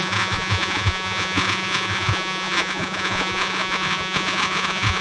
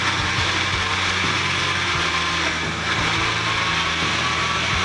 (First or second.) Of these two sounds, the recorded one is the second